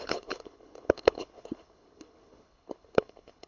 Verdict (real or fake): fake